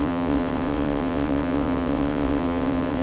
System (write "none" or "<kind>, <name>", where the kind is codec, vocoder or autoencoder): vocoder, WaveNeXt